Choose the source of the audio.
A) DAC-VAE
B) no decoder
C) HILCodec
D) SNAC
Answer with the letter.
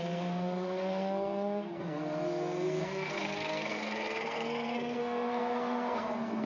D